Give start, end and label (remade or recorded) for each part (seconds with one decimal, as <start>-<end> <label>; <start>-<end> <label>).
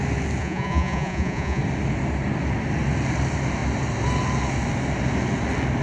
0.0-0.4 recorded; 0.4-1.6 remade; 1.6-5.8 recorded